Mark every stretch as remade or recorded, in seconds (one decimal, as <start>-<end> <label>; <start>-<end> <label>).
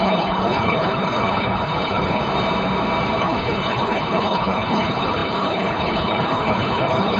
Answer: 0.0-2.2 remade; 2.2-3.2 recorded; 3.2-7.2 remade